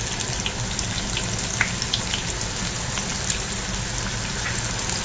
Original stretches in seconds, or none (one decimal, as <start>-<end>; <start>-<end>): 0.0-5.0